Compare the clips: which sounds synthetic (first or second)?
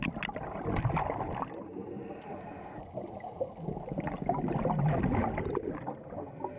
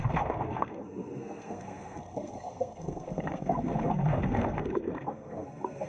second